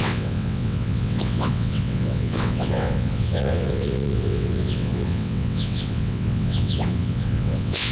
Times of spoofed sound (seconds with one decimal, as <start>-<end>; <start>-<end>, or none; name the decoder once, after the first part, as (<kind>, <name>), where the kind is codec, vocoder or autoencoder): 0.0-7.9 (vocoder, WaveNeXt)